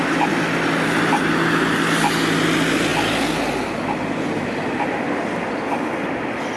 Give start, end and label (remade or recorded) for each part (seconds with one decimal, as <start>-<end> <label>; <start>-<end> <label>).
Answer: 0.0-6.6 recorded